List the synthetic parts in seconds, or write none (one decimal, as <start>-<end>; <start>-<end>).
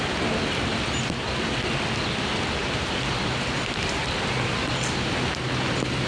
2.6-4.7